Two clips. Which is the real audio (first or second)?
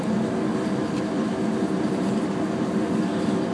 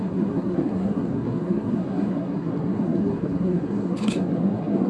first